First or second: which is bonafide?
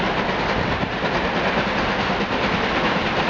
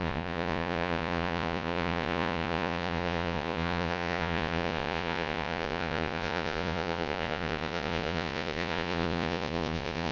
first